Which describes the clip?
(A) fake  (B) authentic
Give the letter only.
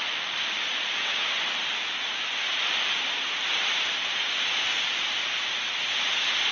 B